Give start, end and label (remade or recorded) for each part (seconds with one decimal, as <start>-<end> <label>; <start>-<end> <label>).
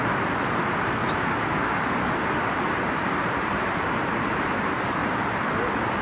0.0-1.0 remade; 1.0-3.2 recorded; 3.2-5.0 remade; 5.0-6.0 recorded